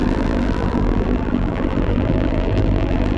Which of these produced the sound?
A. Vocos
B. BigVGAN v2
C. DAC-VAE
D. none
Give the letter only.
B